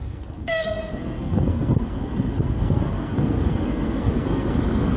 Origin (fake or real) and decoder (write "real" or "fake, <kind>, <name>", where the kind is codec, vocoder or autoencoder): fake, codec, SNAC